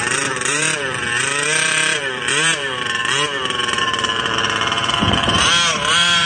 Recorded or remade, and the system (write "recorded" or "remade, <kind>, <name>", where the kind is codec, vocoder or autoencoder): remade, vocoder, BigVGAN v2